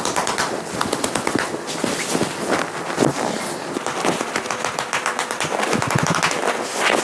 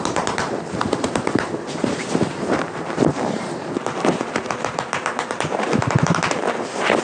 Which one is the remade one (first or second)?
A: second